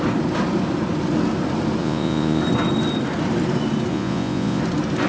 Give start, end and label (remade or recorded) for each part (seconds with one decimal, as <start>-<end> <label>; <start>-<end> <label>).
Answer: 0.0-1.8 recorded; 1.8-2.4 remade; 2.4-3.9 recorded; 3.9-4.6 remade; 4.6-5.1 recorded